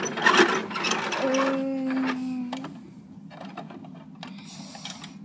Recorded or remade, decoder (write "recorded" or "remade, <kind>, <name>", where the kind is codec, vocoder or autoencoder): recorded